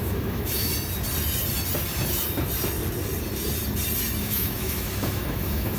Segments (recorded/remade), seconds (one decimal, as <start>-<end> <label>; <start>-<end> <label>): 0.0-0.7 remade; 0.7-4.2 recorded; 4.2-5.8 remade